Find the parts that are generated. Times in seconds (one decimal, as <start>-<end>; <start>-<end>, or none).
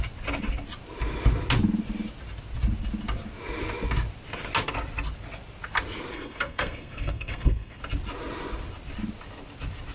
6.1-7.8